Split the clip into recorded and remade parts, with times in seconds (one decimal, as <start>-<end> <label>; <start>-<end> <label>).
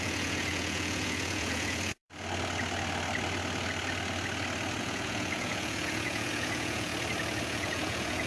0.0-2.0 remade; 2.0-4.8 recorded; 4.8-6.9 remade; 6.9-7.5 recorded; 7.5-8.3 remade